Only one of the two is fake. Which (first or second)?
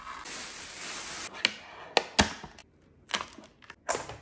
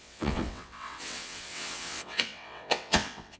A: second